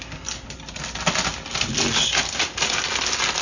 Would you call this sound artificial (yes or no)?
no